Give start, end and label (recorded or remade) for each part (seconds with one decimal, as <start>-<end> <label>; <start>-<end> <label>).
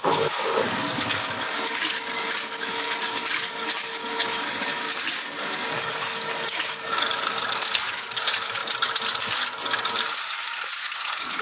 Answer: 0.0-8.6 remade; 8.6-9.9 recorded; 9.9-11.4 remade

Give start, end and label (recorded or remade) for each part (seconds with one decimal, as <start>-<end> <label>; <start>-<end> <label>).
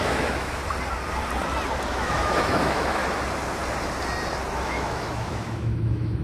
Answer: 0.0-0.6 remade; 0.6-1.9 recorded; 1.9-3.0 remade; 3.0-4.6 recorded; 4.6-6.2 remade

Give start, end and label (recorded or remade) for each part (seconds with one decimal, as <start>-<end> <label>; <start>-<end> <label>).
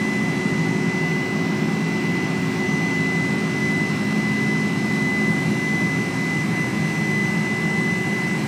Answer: 0.0-8.5 recorded